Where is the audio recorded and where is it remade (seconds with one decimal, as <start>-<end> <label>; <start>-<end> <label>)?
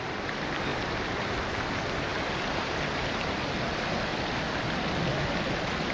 0.0-0.7 recorded; 0.7-1.3 remade; 1.3-4.1 recorded; 4.1-4.6 remade; 4.6-5.9 recorded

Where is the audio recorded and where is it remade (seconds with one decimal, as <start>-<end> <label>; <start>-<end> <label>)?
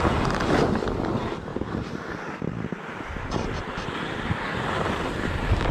0.0-1.5 recorded; 1.5-4.9 remade; 4.9-5.7 recorded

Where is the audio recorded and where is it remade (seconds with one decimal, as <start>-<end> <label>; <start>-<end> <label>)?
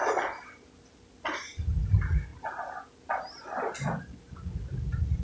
0.0-5.2 recorded